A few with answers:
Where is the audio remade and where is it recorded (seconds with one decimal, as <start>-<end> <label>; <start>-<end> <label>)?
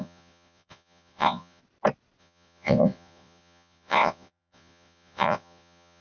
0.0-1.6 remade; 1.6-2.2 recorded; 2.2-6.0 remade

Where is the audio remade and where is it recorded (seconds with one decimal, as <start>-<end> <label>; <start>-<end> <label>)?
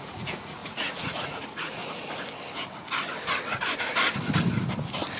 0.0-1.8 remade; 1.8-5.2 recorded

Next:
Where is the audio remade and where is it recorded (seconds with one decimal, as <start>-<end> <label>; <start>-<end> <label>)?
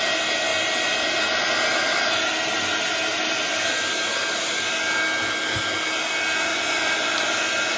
0.0-6.5 recorded; 6.5-7.3 remade; 7.3-7.8 recorded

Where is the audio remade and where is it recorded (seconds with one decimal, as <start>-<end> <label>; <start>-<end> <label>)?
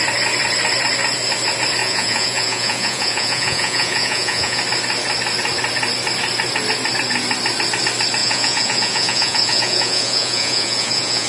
0.0-1.8 recorded; 1.8-4.6 remade; 4.6-8.2 recorded; 8.2-11.3 remade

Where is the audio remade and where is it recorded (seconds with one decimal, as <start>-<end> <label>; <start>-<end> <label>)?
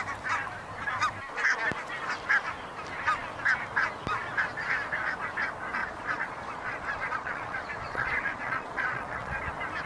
0.0-5.8 recorded; 5.8-9.4 remade; 9.4-9.9 recorded